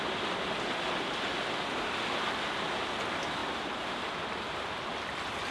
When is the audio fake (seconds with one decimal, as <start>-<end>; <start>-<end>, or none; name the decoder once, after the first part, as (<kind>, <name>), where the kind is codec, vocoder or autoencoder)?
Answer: 3.4-4.7 (vocoder, BigVGAN v2)